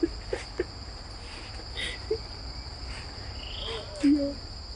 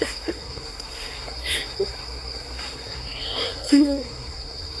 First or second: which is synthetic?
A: second